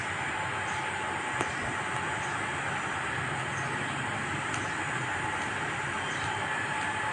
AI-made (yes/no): no